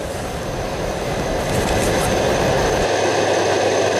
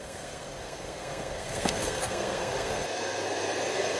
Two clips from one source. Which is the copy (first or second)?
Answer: second